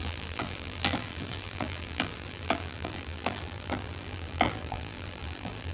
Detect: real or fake fake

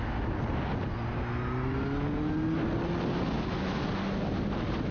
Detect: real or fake real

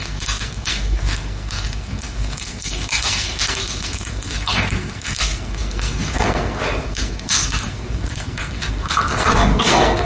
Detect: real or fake fake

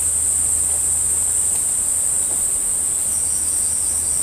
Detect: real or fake real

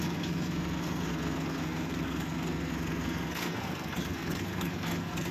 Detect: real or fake fake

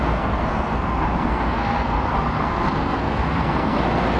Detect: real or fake fake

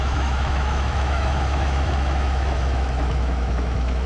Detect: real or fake fake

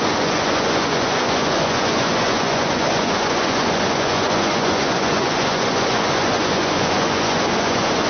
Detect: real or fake fake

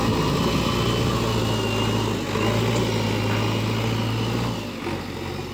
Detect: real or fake real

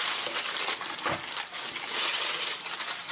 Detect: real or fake real